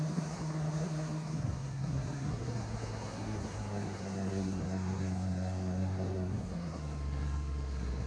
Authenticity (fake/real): fake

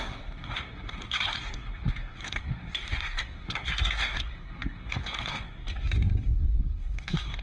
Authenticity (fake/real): fake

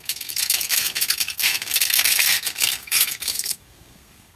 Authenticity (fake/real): fake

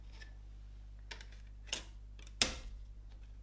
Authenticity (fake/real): real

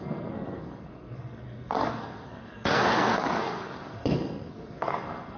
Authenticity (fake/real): fake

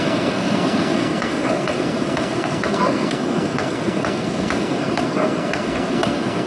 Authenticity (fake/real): fake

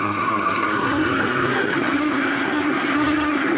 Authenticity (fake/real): fake